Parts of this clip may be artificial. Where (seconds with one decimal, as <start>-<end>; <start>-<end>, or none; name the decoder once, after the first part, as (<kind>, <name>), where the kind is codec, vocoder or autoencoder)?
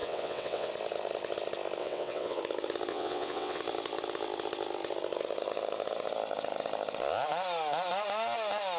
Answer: 0.0-0.7 (vocoder, WaveNeXt); 1.8-2.4; 2.9-3.6